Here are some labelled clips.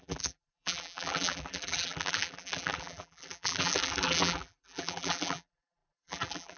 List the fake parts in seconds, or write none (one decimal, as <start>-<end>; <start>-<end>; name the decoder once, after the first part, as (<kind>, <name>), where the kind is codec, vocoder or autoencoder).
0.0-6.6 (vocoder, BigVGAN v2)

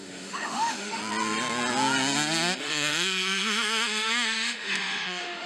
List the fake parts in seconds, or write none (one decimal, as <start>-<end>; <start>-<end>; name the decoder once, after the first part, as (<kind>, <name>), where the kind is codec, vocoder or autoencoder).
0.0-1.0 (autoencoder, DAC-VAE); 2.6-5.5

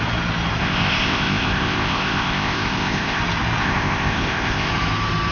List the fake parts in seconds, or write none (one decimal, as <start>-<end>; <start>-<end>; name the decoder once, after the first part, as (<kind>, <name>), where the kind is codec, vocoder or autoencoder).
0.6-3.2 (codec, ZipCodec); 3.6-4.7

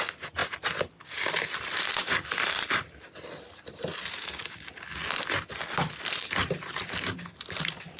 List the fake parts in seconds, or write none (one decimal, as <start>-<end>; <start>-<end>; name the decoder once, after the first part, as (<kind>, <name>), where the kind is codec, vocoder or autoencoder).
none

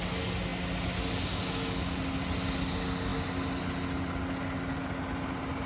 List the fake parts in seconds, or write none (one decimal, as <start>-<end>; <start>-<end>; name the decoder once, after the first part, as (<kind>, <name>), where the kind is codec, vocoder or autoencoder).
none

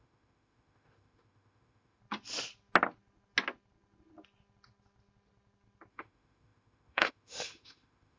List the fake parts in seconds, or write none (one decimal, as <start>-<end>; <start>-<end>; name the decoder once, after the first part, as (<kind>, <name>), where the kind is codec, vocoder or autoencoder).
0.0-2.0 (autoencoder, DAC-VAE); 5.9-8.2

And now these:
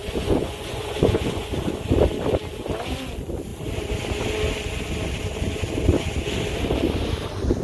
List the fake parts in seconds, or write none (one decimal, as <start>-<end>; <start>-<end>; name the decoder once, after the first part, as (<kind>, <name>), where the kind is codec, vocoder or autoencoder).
0.0-1.5 (vocoder, Vocos)

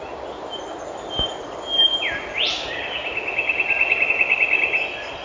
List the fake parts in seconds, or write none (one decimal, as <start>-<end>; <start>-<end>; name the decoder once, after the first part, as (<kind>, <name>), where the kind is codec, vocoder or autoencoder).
none